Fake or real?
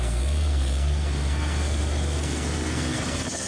fake